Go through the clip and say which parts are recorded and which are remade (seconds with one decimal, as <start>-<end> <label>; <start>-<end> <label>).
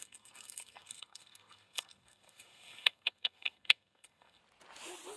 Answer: 0.0-4.4 remade; 4.4-5.2 recorded